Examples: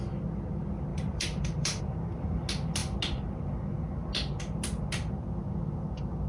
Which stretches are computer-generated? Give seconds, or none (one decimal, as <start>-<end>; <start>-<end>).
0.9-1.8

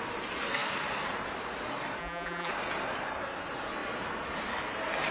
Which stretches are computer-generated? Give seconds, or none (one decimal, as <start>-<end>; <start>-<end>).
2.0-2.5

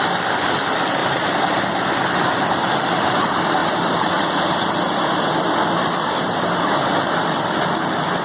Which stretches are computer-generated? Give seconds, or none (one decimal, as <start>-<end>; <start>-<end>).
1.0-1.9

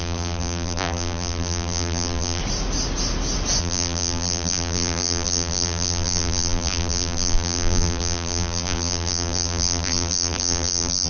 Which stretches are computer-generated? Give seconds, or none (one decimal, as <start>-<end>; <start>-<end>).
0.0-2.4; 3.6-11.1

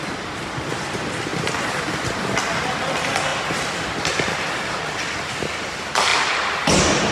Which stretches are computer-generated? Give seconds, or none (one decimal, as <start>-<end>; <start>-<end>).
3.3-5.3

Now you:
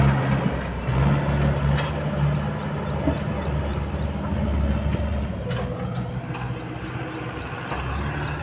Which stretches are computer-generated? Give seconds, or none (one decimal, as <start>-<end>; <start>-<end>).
none